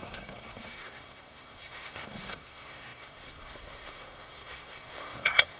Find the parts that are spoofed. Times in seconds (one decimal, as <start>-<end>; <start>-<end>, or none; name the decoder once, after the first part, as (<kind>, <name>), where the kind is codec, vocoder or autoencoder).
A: 0.0-5.6 (codec, SNAC)